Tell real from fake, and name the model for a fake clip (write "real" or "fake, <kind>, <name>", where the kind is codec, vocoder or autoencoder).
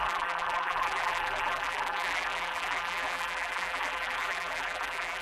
fake, vocoder, BigVGAN v2